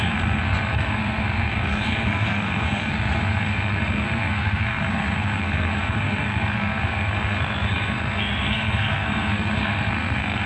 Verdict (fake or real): fake